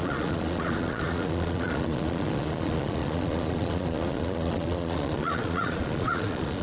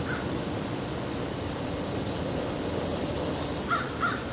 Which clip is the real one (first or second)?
second